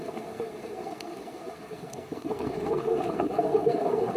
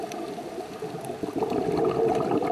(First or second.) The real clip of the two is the second